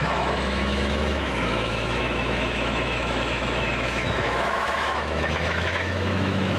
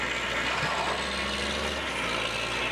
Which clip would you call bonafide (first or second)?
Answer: second